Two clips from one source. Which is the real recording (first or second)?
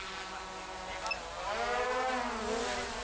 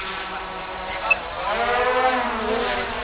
first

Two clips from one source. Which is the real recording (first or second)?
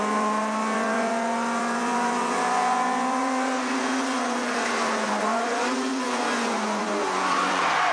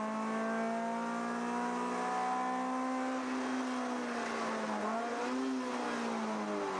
second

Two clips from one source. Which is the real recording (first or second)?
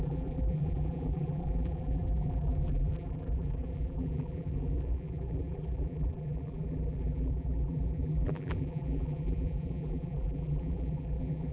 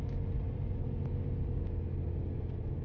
second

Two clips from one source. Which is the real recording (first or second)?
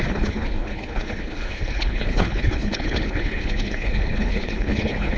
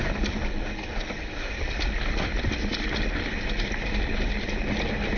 second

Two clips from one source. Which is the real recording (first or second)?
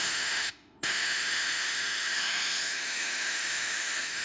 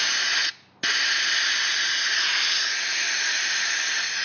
second